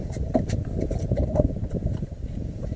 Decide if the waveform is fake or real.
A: fake